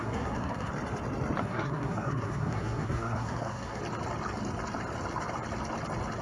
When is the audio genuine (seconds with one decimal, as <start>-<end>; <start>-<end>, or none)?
0.7-1.4; 3.8-6.2